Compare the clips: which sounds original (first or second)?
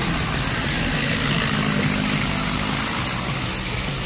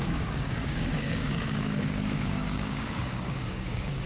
first